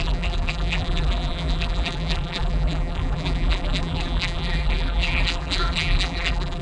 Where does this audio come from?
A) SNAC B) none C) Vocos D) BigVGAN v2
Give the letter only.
D